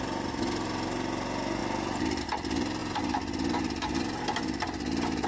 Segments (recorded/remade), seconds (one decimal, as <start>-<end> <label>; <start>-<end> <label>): 0.0-1.6 recorded; 1.6-2.2 remade; 2.2-2.8 recorded; 2.8-4.2 remade; 4.2-5.3 recorded